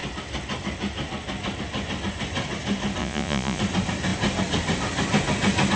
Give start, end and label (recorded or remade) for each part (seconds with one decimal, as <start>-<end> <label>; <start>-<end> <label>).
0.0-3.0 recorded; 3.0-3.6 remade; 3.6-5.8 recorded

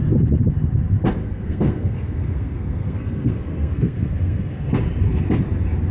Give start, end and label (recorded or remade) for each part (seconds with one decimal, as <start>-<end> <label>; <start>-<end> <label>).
0.0-1.2 recorded; 1.2-4.7 remade; 4.7-5.9 recorded

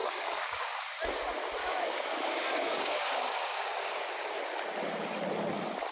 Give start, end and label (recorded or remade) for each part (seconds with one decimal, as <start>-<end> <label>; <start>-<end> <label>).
0.0-0.8 remade; 0.8-1.6 recorded; 1.6-4.4 remade; 4.4-5.9 recorded

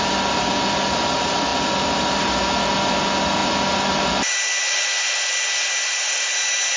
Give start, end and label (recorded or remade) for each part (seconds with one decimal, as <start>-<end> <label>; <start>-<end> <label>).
0.0-6.8 recorded

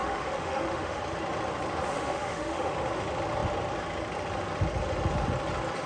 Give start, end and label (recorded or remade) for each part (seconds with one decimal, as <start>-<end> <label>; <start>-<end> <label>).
0.0-1.0 remade; 1.0-1.9 recorded; 1.9-2.7 remade; 2.7-5.9 recorded